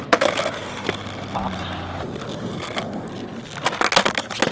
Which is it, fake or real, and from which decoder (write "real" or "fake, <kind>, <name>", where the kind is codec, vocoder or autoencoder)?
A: real